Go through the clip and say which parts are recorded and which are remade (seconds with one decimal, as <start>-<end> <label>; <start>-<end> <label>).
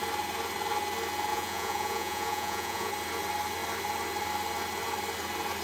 0.0-1.3 recorded; 1.3-2.9 remade; 2.9-5.6 recorded